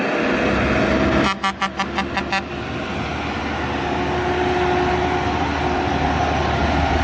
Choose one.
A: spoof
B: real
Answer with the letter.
B